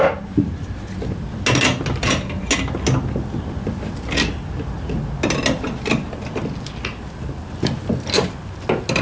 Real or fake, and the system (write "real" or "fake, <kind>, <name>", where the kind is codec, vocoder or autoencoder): real